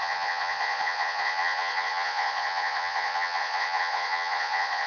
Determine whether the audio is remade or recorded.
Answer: remade